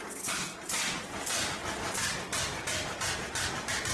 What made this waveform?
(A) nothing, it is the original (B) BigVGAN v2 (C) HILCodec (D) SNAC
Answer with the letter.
A